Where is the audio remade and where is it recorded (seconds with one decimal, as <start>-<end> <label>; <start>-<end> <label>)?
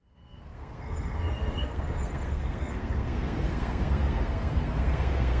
0.0-5.4 remade